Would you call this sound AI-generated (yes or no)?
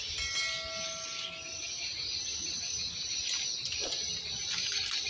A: no